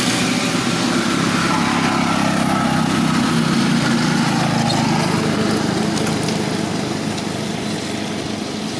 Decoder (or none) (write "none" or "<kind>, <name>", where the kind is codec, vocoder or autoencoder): none